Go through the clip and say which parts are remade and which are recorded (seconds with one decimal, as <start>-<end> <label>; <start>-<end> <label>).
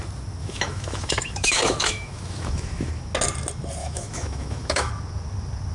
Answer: 0.0-0.4 recorded; 0.4-2.9 remade; 2.9-3.8 recorded; 3.8-4.9 remade; 4.9-5.7 recorded